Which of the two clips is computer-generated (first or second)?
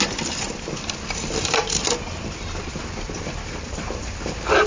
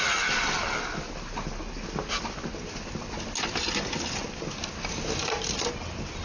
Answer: first